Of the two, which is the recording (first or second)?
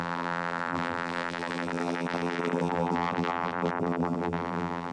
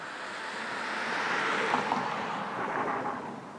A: second